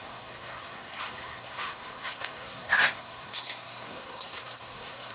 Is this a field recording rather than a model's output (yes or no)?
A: no